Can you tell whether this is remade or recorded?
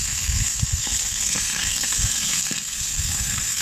remade